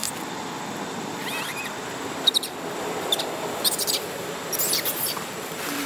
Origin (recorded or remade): recorded